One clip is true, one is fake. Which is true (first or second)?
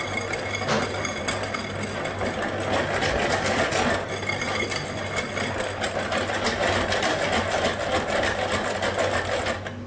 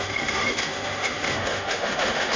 first